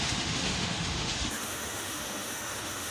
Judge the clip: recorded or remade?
remade